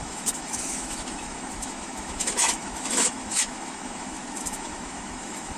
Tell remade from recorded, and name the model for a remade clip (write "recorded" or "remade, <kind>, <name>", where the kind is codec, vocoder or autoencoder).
remade, autoencoder, DAC-VAE